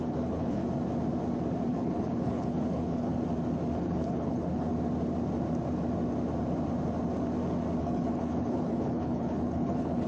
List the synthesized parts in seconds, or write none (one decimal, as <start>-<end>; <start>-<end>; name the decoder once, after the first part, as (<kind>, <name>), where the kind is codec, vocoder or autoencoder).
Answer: 0.0-0.6 (codec, HILCodec); 1.7-3.1; 3.8-4.7; 7.8-10.1